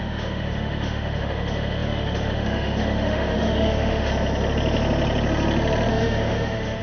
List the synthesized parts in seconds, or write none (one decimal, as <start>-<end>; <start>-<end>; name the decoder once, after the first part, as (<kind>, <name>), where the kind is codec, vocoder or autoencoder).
0.0-4.1 (autoencoder, DAC-VAE); 5.9-6.8

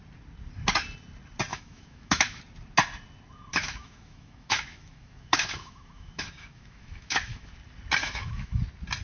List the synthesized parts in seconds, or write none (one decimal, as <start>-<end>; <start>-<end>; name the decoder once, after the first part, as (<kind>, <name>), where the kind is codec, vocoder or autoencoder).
1.5-2.4 (autoencoder, DAC-VAE); 3.5-7.5; 8.0-8.6

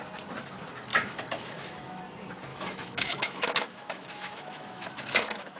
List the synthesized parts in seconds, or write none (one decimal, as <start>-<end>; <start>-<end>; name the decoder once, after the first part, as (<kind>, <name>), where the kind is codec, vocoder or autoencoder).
0.9-2.0 (autoencoder, DAC-VAE); 2.5-5.6

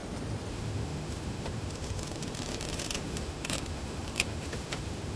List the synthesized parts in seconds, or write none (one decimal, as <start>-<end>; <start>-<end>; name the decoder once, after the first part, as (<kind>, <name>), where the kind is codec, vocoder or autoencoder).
0.5-5.2 (autoencoder, DAC-VAE)

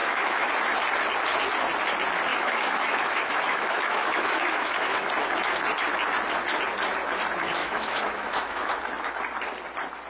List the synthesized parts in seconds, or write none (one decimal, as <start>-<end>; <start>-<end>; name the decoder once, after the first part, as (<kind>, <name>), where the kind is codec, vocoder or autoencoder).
0.0-0.5 (autoencoder, DAC-VAE); 2.3-5.1; 7.6-8.8

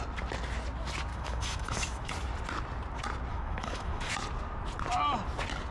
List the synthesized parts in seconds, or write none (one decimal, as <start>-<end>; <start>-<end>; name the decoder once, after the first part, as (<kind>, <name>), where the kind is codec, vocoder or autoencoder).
1.1-2.1 (autoencoder, DAC-VAE); 3.3-4.1

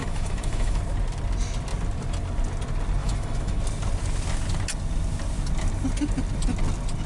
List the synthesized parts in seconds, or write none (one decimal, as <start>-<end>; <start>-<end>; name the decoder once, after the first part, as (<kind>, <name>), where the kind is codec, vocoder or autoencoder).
0.0-0.8 (autoencoder, DAC-VAE); 3.0-3.6